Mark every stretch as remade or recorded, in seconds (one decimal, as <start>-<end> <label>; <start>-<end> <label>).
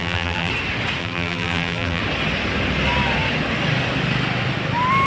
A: 0.0-0.5 remade; 0.5-1.0 recorded; 1.0-2.0 remade; 2.0-5.1 recorded